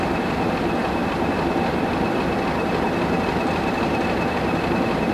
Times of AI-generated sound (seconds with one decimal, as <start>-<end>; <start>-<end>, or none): none